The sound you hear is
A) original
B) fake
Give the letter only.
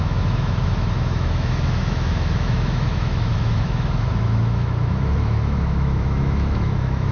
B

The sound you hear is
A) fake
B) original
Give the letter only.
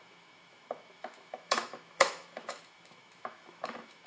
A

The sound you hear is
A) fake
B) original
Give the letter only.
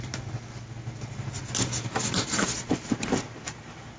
B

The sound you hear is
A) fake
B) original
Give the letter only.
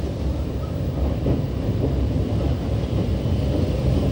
B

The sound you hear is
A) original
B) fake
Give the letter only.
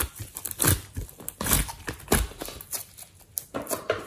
A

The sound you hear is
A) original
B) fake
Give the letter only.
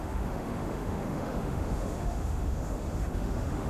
B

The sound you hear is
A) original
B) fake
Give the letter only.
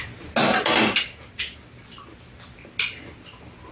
A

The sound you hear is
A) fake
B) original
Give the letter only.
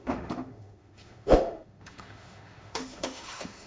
A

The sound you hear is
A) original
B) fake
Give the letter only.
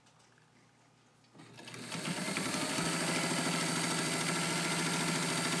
A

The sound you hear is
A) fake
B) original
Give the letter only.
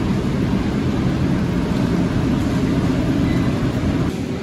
B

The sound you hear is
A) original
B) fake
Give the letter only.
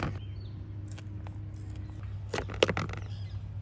A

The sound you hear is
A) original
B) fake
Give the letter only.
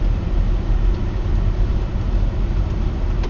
A